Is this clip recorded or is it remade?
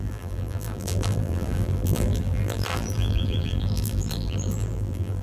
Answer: remade